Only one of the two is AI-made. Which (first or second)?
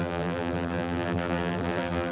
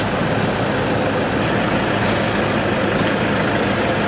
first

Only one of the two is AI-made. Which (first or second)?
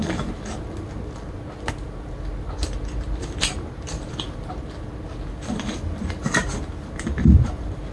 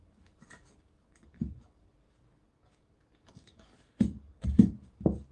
second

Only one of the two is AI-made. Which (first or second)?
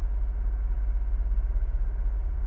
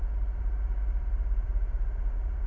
second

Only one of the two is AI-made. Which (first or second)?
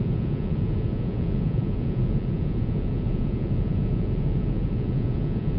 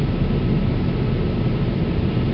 first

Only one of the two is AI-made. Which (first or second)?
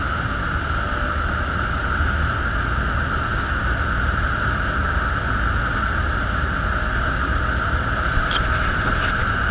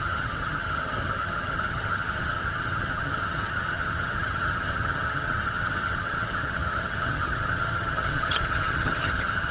second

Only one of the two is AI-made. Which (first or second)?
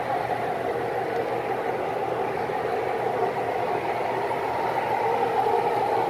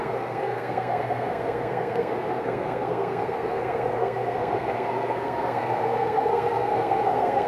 second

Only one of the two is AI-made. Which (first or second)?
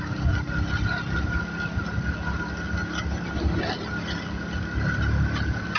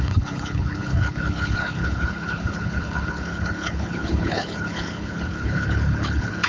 second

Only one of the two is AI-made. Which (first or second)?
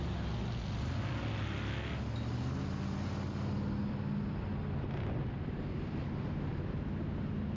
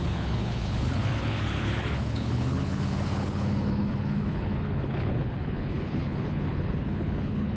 second